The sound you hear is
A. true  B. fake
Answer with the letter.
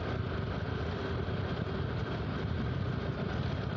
A